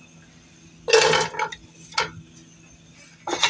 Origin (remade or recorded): recorded